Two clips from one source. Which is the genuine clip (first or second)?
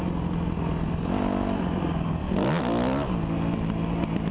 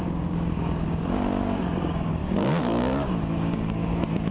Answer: first